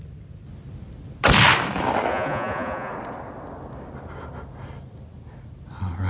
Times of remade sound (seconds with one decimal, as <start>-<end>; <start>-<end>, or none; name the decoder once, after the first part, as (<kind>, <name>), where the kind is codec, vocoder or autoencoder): 2.1-2.9 (vocoder, Vocos)